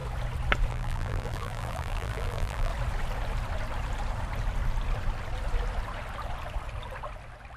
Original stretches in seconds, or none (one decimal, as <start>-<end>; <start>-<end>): 0.0-0.7; 2.7-7.6